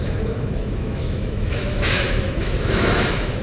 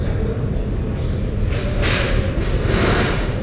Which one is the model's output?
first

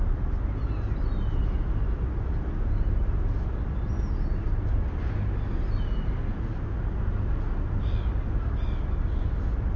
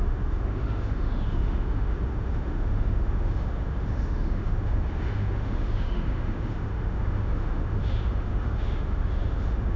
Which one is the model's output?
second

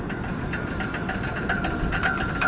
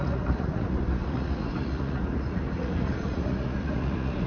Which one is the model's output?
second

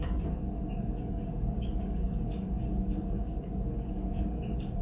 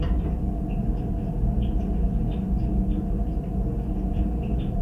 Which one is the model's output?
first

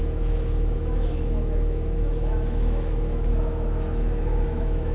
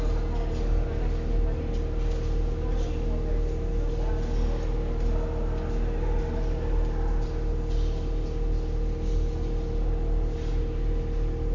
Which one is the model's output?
first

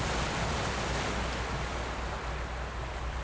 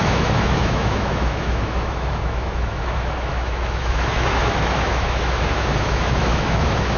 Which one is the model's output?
second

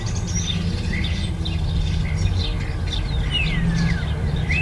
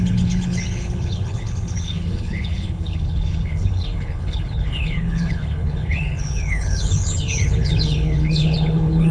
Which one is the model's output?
second